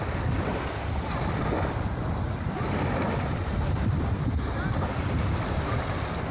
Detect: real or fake real